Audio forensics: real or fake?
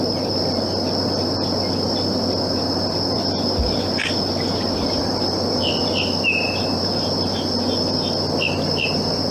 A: real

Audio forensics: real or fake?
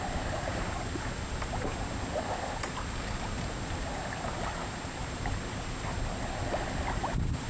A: real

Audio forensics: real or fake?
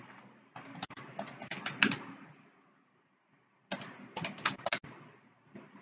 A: real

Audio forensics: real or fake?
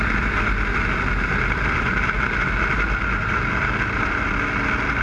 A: real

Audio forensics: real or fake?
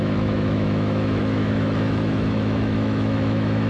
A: fake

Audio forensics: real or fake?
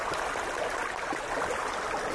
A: real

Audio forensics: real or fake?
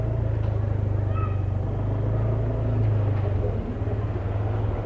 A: real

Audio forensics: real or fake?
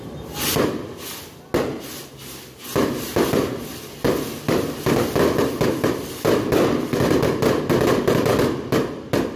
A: real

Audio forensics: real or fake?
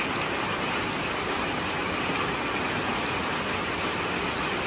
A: real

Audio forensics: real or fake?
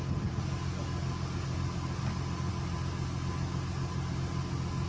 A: real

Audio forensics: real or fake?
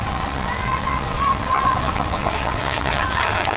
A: fake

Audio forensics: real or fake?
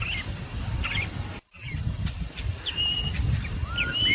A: fake